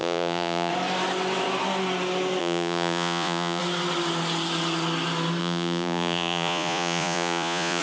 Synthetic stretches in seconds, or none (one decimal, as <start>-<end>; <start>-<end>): 0.0-0.7; 2.4-3.6; 5.4-7.8